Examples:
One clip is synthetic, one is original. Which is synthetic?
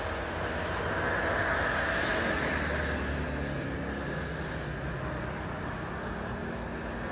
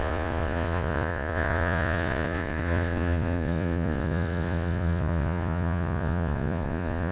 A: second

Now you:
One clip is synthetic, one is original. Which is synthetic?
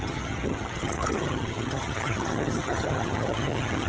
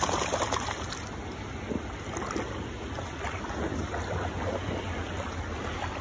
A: first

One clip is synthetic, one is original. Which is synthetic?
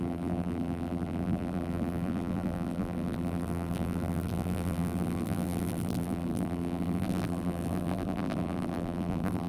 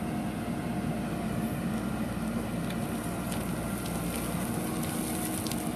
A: first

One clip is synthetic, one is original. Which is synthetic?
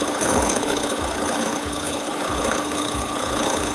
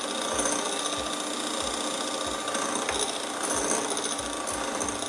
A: first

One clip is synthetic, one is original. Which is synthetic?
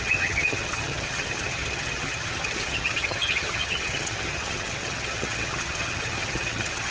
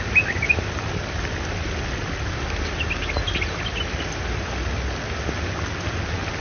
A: first